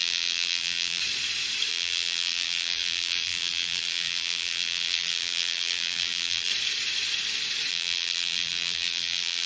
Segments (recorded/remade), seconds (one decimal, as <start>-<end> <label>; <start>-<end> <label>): 0.0-1.0 remade; 1.0-1.7 recorded; 1.7-6.5 remade; 6.5-7.7 recorded; 7.7-9.5 remade

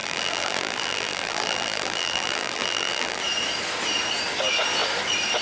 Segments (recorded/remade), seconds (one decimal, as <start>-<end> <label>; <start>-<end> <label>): 0.0-3.2 remade; 3.2-5.4 recorded

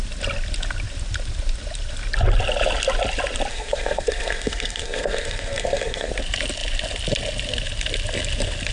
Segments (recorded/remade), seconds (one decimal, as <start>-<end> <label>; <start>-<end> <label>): 0.0-3.5 recorded; 3.5-6.1 remade; 6.1-8.7 recorded

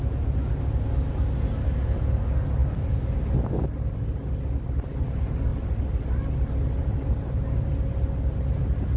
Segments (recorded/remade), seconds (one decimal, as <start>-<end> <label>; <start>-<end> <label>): 0.0-9.0 recorded